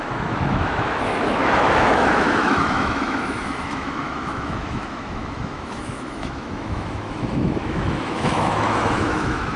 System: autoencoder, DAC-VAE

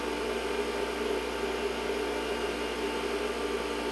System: none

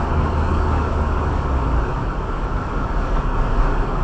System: codec, DAC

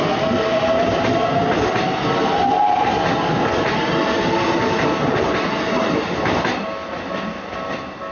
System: none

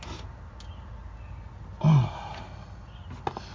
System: none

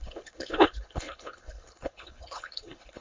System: codec, HILCodec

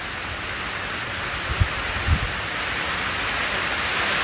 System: none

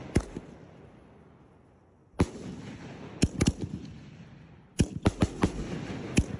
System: none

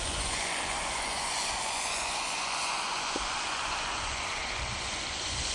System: vocoder, Vocos